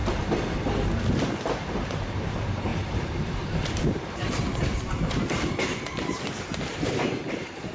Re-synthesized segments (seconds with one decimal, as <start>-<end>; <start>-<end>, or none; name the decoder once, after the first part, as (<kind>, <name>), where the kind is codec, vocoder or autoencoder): 1.1-7.7 (vocoder, BigVGAN v2)